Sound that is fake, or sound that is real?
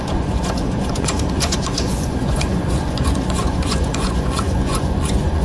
fake